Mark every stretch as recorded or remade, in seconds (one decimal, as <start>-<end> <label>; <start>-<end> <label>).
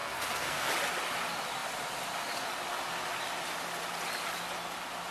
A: 0.0-0.7 remade; 0.7-5.1 recorded